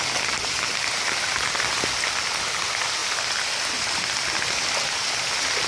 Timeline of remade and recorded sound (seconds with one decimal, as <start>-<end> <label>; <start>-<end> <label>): 0.0-5.7 recorded

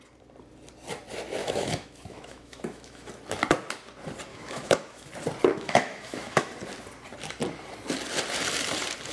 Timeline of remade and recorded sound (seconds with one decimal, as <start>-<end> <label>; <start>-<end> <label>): 0.0-1.4 recorded; 1.4-3.1 remade; 3.1-4.3 recorded; 4.3-5.1 remade; 5.1-5.5 recorded; 5.5-6.5 remade; 6.5-9.1 recorded

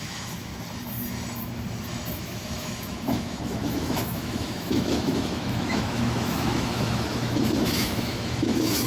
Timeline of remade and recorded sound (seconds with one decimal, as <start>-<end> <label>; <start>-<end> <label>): 0.0-0.5 remade; 0.5-2.2 recorded; 2.2-8.9 remade

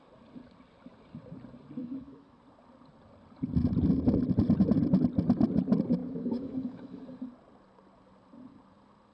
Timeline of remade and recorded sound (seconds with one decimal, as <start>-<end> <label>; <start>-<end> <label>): 0.0-1.8 recorded; 1.8-2.4 remade; 2.4-6.0 recorded; 6.0-7.0 remade; 7.0-9.1 recorded

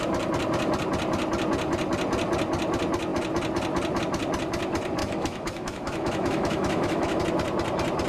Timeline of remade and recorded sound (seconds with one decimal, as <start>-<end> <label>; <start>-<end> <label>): 0.0-5.0 recorded; 5.0-7.2 remade; 7.2-8.1 recorded

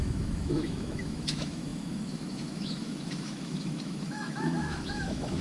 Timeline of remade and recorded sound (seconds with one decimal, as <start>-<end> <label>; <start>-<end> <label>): 0.0-5.4 remade

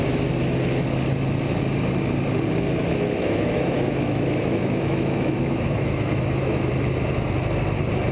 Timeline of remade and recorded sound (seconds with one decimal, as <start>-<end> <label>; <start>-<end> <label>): 0.0-2.8 recorded; 2.8-6.7 remade; 6.7-8.1 recorded

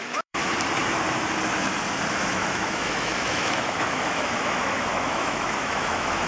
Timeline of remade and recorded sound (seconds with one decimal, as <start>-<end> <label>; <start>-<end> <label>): 0.0-0.4 remade; 0.4-2.1 recorded; 2.1-6.3 remade